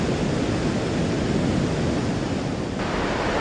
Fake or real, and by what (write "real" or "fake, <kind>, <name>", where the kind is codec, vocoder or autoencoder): real